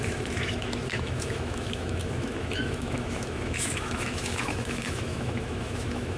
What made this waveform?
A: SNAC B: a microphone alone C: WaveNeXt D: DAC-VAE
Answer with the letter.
D